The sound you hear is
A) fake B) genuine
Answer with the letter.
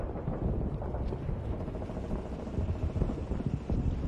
B